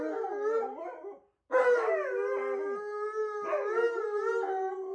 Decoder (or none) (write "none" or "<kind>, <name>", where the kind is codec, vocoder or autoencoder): none